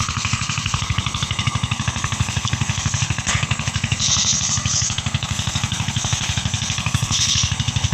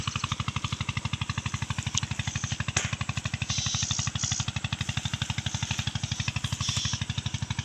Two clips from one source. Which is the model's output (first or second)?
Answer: first